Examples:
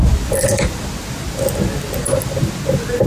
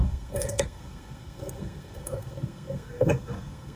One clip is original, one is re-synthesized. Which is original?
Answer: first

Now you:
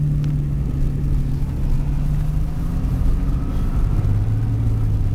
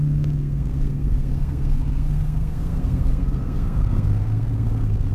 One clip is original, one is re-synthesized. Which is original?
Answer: first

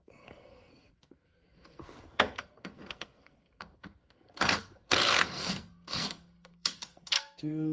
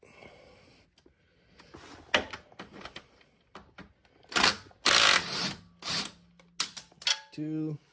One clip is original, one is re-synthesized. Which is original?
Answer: second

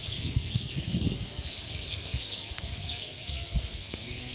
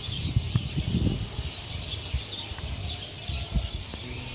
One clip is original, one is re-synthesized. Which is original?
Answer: second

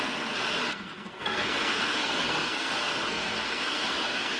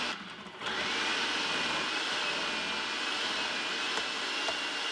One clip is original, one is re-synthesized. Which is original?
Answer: second